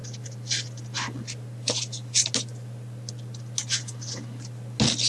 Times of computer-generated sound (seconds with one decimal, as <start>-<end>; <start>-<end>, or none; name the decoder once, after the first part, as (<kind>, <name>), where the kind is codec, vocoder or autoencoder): none